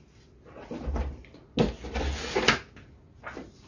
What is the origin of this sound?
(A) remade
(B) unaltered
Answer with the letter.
B